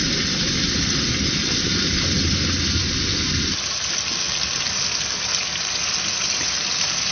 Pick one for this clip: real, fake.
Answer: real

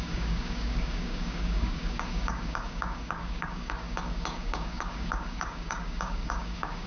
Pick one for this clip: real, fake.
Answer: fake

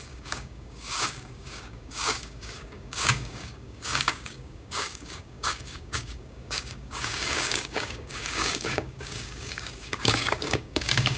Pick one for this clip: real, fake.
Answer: fake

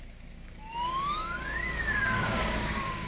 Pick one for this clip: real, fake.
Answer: fake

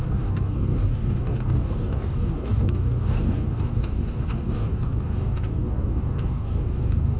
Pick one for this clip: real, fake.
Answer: fake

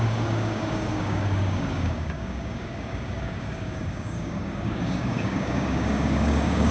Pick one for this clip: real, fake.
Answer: fake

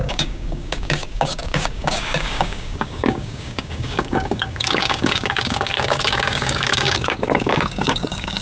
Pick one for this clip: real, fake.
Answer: fake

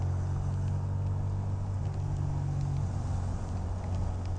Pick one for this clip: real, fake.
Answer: real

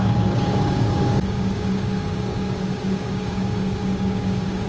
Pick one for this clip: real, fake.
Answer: fake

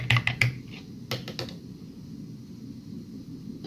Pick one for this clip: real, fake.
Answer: real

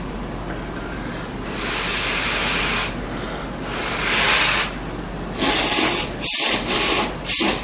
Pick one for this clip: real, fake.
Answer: real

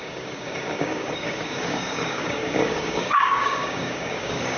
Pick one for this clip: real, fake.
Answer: fake